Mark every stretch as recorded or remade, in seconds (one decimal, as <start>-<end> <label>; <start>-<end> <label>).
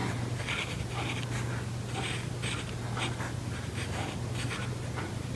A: 0.0-5.4 recorded